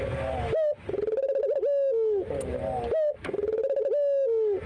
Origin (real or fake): real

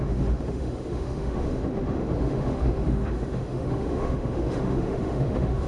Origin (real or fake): fake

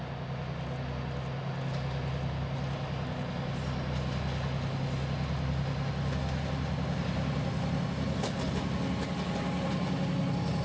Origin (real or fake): real